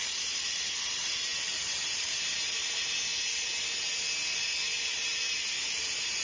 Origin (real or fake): fake